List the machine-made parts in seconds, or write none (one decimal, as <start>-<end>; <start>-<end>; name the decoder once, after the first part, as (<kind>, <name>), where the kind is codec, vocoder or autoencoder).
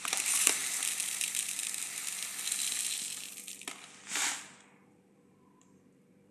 0.0-0.6 (vocoder, BigVGAN v2); 4.4-6.3